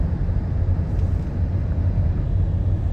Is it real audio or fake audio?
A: real